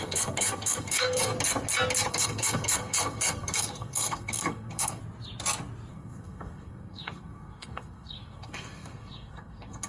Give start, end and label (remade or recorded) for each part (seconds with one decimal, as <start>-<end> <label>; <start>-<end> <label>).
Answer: 0.0-1.3 remade; 1.3-2.1 recorded; 2.1-5.0 remade; 5.0-5.9 recorded; 5.9-9.9 remade